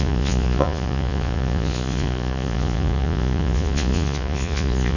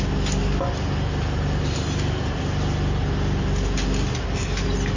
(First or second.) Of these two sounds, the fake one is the first